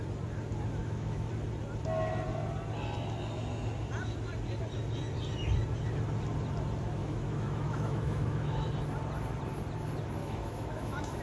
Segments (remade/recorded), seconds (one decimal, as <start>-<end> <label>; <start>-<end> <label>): 0.0-0.8 recorded; 0.8-1.3 remade; 1.3-7.0 recorded; 7.0-8.7 remade; 8.7-10.2 recorded; 10.2-11.2 remade